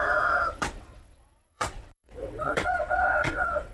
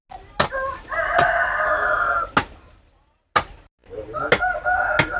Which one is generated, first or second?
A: first